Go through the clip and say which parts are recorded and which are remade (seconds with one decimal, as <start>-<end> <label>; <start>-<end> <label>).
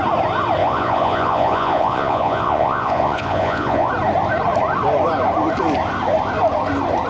0.0-0.6 recorded; 0.6-3.9 remade; 3.9-7.1 recorded